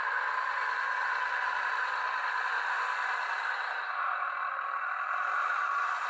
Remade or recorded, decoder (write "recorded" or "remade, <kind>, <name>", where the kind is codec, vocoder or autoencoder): recorded